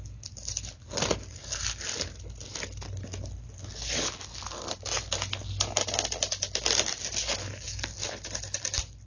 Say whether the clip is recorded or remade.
recorded